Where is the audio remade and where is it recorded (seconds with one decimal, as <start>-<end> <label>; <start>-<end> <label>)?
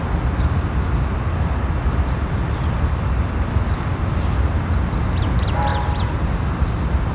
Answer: 0.0-7.1 recorded